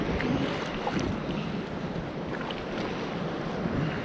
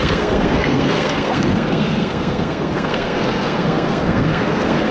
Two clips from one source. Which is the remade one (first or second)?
second